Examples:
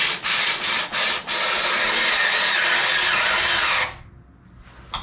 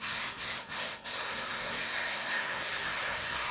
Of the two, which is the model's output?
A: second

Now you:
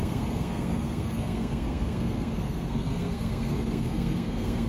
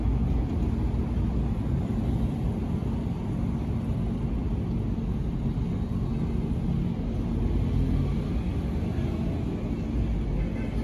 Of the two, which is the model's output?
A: first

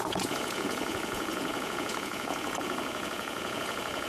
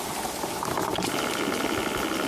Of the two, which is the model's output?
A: first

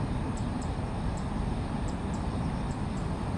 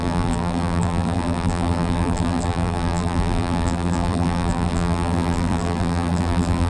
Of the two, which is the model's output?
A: second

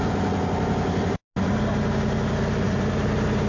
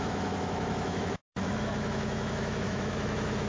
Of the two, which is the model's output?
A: second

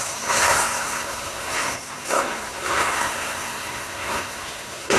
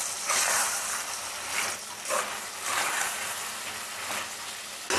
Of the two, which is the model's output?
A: first